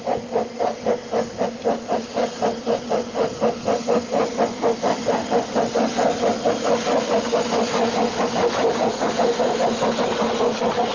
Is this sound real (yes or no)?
yes